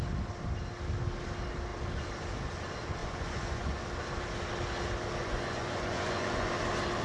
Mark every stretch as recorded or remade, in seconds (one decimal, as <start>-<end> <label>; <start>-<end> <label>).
0.0-3.0 recorded; 3.0-3.8 remade; 3.8-5.2 recorded; 5.2-6.5 remade; 6.5-7.0 recorded